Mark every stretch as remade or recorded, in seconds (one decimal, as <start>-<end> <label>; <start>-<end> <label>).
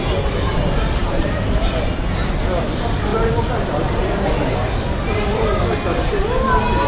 0.0-1.0 recorded; 1.0-1.7 remade; 1.7-6.9 recorded